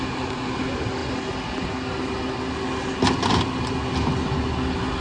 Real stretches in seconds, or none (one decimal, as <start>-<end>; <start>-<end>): 0.0-5.0